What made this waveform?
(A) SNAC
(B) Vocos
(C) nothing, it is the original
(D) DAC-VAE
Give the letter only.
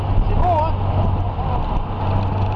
C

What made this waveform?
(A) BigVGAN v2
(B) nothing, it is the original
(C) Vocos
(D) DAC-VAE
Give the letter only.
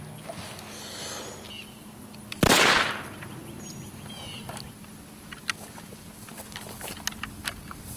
B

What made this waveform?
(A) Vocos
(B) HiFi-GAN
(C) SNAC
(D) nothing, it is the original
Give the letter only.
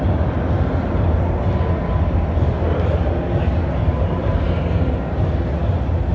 D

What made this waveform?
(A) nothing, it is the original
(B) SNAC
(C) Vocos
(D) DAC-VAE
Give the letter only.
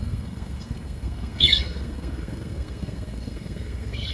B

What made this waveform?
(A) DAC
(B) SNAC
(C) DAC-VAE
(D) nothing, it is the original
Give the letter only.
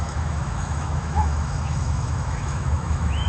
C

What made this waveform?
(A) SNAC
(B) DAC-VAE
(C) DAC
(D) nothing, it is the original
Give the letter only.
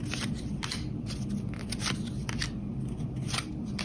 D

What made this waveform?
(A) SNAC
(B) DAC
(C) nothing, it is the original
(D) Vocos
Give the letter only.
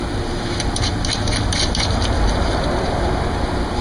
C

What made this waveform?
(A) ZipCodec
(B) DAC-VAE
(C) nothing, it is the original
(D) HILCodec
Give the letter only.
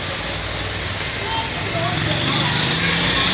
C